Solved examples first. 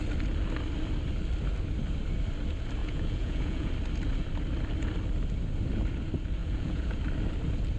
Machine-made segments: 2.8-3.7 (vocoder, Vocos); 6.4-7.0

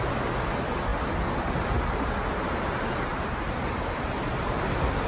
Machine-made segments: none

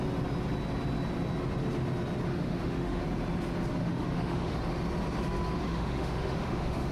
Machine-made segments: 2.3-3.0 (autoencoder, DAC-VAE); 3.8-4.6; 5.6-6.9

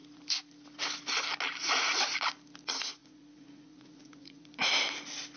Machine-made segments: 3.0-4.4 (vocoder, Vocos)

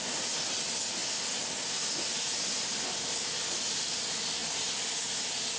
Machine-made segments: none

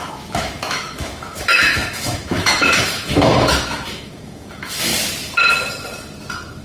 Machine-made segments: 0.0-4.9 (autoencoder, DAC-VAE)